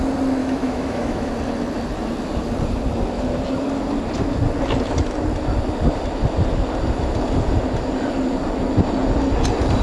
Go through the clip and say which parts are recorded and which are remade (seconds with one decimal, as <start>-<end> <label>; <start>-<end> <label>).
0.0-0.4 recorded; 0.4-1.3 remade; 1.3-9.8 recorded

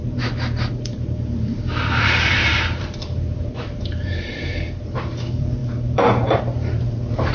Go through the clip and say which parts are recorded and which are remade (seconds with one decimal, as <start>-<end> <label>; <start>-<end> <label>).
0.0-7.3 remade

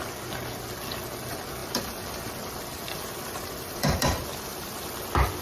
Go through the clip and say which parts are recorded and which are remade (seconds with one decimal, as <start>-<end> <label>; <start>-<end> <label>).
0.0-1.6 recorded; 1.6-4.8 remade; 4.8-5.4 recorded

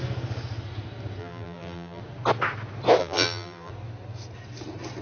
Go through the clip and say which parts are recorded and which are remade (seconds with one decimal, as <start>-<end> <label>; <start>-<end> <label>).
0.0-1.2 recorded; 1.2-2.0 remade; 2.0-3.0 recorded; 3.0-3.7 remade; 3.7-5.0 recorded

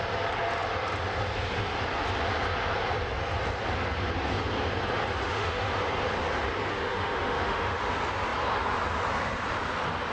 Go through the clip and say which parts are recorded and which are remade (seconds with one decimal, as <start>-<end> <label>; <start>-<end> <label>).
0.0-5.2 recorded; 5.2-5.8 remade; 5.8-6.7 recorded; 6.7-7.9 remade; 7.9-10.1 recorded

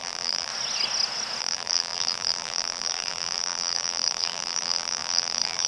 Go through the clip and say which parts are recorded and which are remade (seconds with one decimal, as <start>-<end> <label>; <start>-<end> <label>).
0.0-0.5 remade; 0.5-1.4 recorded; 1.4-5.7 remade

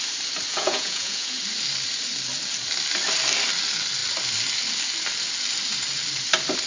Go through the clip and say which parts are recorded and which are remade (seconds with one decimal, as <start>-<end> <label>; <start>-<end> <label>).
0.0-0.5 recorded; 0.5-1.4 remade; 1.4-6.7 recorded

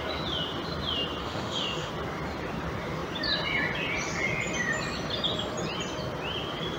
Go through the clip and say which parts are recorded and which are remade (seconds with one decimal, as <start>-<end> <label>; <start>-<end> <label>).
0.0-1.2 recorded; 1.2-1.9 remade; 1.9-6.8 recorded